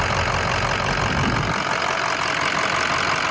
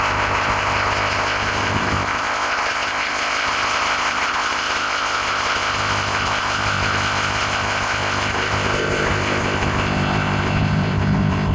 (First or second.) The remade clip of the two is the second